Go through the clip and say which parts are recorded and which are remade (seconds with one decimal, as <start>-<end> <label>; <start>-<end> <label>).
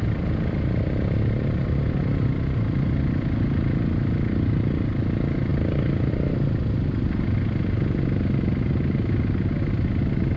0.0-10.4 recorded